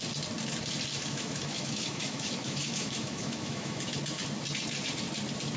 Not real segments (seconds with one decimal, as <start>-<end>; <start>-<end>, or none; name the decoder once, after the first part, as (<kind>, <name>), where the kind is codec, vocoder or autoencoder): 1.0-4.0 (autoencoder, DAC-VAE)